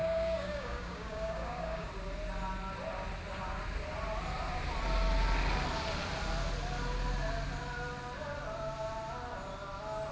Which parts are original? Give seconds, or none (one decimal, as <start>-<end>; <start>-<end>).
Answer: 1.9-10.1